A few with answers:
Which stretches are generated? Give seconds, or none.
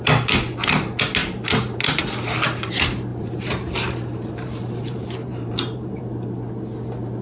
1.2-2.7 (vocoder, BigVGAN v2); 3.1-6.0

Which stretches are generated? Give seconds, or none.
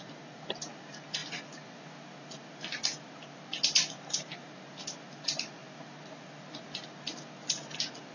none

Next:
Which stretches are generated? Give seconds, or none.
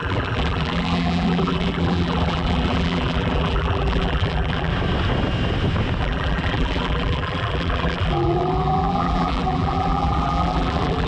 0.0-4.7 (vocoder, BigVGAN v2); 6.0-11.1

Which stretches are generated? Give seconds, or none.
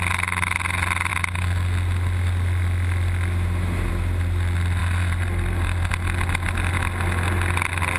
4.8-5.9 (vocoder, BigVGAN v2)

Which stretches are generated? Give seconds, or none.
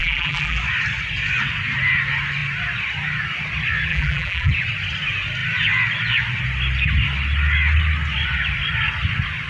0.0-0.6 (vocoder, BigVGAN v2); 3.9-4.5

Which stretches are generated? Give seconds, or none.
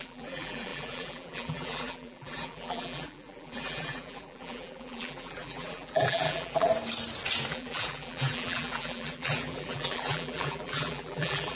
0.0-6.7 (vocoder, BigVGAN v2); 7.5-11.6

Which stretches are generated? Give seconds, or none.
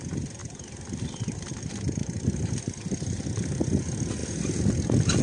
0.4-1.6 (vocoder, BigVGAN v2); 2.0-2.5